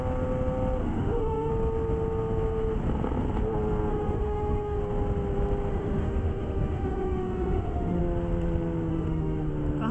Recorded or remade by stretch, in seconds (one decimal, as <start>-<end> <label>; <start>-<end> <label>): 0.0-0.8 recorded; 0.8-1.5 remade; 1.5-3.9 recorded; 3.9-4.8 remade; 4.8-5.7 recorded; 5.7-8.0 remade; 8.0-8.9 recorded; 8.9-9.5 remade; 9.5-9.9 recorded